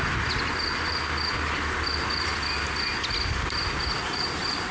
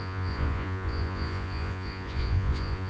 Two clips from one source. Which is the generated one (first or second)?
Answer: second